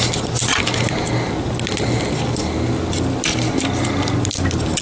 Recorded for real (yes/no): yes